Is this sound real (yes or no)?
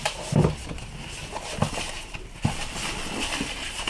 yes